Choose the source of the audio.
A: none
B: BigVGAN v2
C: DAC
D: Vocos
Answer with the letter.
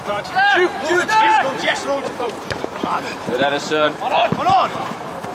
B